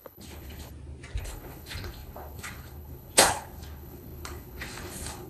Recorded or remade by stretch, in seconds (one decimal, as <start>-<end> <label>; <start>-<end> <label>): 0.0-0.7 remade; 0.7-1.2 recorded; 1.2-5.3 remade